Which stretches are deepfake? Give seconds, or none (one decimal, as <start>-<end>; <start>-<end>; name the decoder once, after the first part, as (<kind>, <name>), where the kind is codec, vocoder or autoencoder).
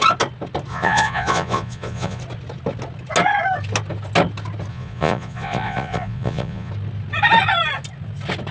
0.7-2.2 (vocoder, Vocos); 4.7-6.7